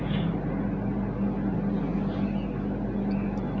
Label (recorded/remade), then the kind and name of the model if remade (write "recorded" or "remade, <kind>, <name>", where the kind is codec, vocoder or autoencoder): recorded